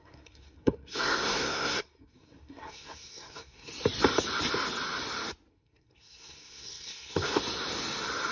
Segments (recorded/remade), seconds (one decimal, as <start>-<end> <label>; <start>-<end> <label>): 0.0-3.7 remade; 3.7-5.5 recorded; 5.5-7.4 remade; 7.4-8.3 recorded